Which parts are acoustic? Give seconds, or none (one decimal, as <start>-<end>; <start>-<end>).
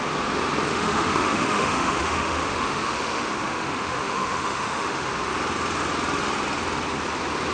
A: 0.0-0.7; 5.1-7.5